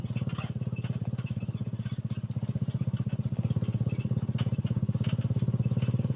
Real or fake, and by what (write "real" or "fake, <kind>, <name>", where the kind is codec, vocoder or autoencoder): real